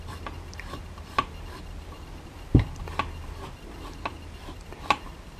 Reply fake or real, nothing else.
real